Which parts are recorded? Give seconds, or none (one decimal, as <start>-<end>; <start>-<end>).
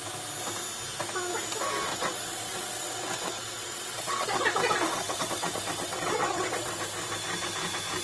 0.0-1.9; 6.7-8.0